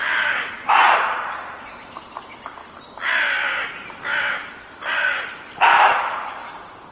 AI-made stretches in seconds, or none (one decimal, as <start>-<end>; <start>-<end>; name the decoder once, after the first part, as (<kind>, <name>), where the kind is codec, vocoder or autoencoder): 0.0-2.6 (vocoder, BigVGAN v2); 4.3-6.9